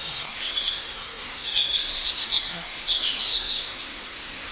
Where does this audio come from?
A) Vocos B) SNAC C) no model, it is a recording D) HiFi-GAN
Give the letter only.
B